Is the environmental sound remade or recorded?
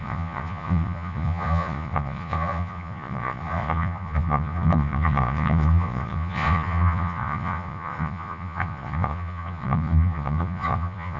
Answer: remade